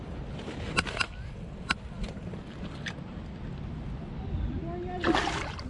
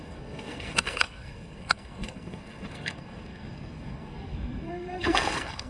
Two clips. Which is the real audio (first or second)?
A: first